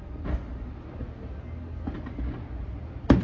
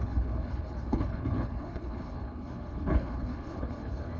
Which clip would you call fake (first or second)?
second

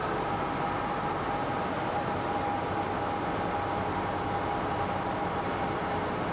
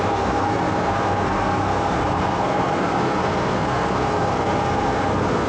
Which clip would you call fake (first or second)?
second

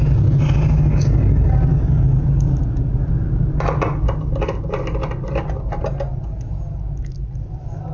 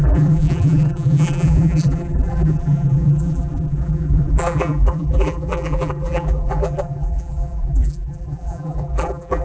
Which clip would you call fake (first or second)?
second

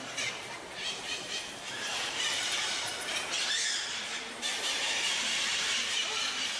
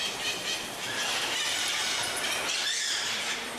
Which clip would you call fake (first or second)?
first